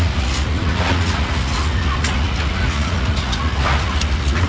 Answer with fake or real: fake